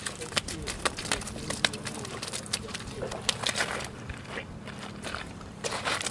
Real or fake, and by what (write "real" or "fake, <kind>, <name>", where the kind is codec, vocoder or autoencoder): real